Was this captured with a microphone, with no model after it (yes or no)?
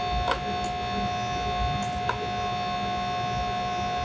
yes